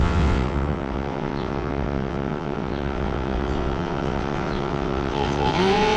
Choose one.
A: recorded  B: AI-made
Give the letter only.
B